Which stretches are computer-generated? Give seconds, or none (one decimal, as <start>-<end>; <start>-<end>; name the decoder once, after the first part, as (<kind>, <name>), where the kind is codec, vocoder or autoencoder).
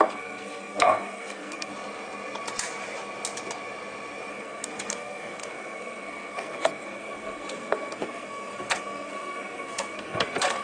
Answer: 0.0-1.7 (codec, SNAC); 4.3-10.6